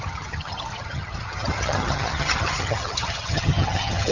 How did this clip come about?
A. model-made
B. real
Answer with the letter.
A